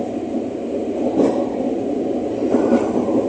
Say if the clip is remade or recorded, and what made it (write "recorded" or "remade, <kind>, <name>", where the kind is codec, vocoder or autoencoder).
recorded